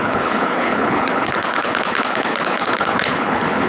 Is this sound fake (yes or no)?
yes